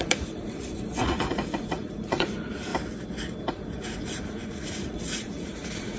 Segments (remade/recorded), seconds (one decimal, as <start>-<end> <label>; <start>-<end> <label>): 0.0-2.7 remade; 2.7-3.5 recorded; 3.5-6.0 remade